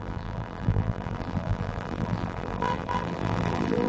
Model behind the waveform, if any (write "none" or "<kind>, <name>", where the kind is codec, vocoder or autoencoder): vocoder, BigVGAN v2